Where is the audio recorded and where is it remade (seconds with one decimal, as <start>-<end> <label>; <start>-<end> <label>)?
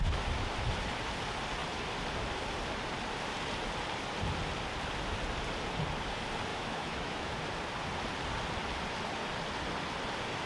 0.0-6.5 recorded; 6.5-7.4 remade; 7.4-10.5 recorded